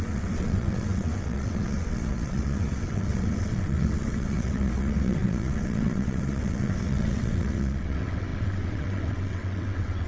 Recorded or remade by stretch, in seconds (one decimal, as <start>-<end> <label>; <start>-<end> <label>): 0.0-10.1 remade